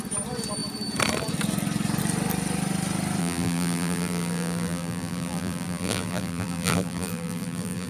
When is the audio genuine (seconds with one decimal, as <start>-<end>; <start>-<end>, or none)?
0.0-3.2